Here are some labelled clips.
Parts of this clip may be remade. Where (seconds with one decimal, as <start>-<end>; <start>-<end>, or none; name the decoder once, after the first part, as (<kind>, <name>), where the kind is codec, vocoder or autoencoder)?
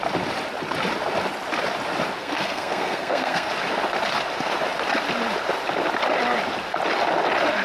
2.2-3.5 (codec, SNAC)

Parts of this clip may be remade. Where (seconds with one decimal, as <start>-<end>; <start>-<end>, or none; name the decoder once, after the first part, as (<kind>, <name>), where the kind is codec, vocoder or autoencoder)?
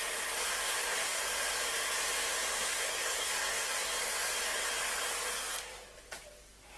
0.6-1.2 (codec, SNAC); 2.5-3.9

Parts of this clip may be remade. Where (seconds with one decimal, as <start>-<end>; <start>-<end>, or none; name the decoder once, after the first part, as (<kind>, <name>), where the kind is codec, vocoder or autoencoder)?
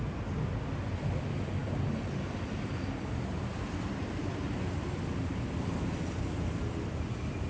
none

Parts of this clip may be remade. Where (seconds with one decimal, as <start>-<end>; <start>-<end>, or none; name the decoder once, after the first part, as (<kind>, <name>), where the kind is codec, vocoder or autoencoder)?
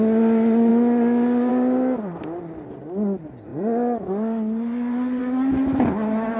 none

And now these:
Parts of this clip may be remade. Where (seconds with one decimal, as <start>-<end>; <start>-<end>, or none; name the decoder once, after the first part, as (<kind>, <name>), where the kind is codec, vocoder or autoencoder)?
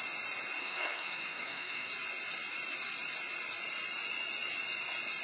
0.6-1.9 (codec, SNAC)